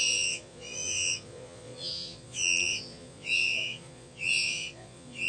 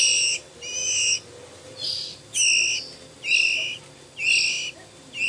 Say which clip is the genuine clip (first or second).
second